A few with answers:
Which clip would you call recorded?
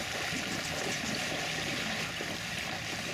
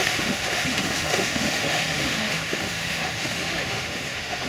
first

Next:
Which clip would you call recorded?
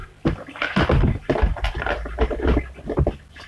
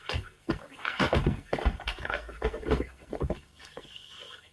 first